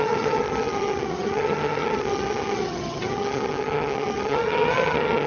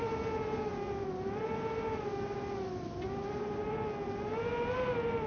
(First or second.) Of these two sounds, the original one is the second